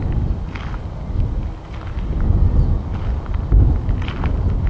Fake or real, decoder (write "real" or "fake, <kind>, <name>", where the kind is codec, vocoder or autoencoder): real